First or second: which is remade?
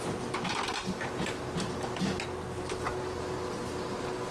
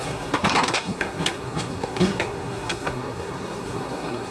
second